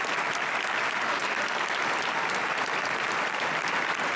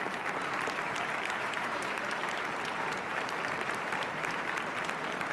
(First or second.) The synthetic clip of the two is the second